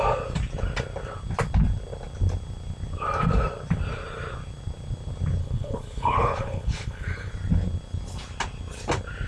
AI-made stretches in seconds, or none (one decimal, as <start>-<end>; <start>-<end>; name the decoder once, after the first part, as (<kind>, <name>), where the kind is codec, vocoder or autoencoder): 5.4-7.3 (codec, HILCodec)